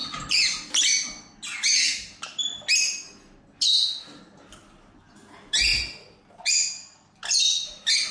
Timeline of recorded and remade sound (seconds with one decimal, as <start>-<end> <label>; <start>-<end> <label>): 0.0-8.1 recorded